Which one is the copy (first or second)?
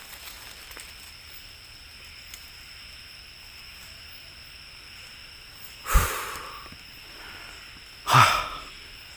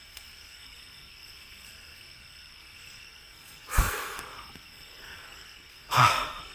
second